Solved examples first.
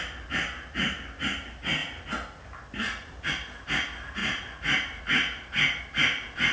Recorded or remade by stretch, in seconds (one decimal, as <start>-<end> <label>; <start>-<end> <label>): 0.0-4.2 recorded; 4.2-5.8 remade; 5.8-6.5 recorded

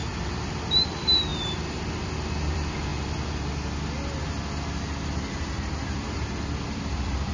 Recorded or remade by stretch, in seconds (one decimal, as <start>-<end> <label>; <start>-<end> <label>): 0.0-2.9 remade; 2.9-5.7 recorded; 5.7-7.3 remade

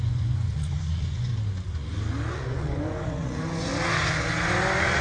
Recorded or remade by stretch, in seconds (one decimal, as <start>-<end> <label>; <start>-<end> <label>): 0.0-1.3 remade; 1.3-2.3 recorded; 2.3-3.7 remade; 3.7-5.0 recorded

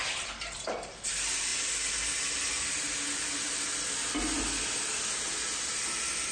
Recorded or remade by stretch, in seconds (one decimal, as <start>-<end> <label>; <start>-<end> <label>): 0.0-6.3 recorded